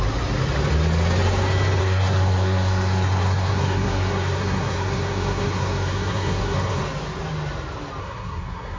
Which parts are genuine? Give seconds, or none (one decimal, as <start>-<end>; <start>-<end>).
0.0-1.8; 6.8-8.0